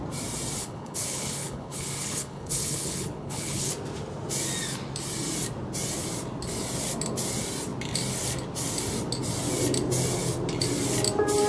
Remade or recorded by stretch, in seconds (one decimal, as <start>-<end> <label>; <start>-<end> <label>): 0.0-0.6 recorded; 0.6-3.7 remade; 3.7-11.5 recorded